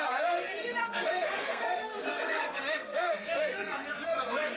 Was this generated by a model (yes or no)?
yes